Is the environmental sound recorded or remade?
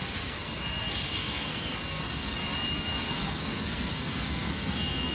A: remade